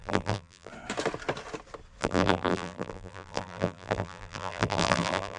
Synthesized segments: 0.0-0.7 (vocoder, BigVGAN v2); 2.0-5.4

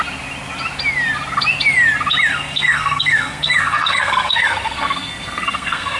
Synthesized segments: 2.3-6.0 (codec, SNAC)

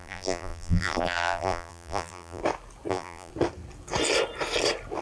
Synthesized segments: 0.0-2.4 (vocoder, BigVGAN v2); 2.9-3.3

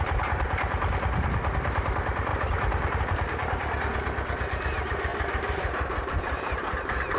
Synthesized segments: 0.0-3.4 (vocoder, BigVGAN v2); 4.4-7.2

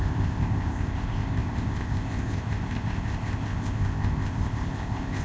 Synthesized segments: 0.0-5.2 (codec, ZipCodec)

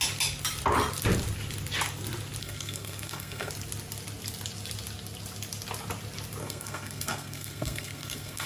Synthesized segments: 2.4-3.5 (codec, SNAC); 6.4-8.5